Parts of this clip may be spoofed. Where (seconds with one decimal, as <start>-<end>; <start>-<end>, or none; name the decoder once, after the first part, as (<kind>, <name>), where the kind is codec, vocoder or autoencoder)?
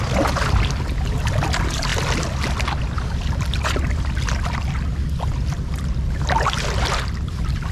none